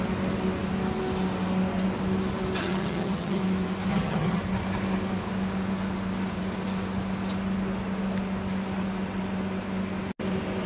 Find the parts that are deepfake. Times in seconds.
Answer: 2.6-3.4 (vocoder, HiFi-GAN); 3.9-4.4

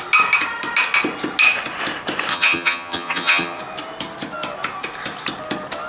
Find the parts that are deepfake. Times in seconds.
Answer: 2.3-3.6 (vocoder, HiFi-GAN)

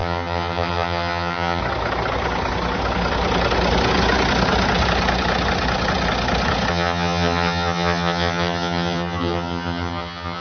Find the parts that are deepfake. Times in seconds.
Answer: 0.0-1.6 (vocoder, HiFi-GAN); 6.7-10.4

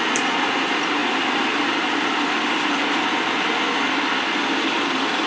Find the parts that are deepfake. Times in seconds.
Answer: none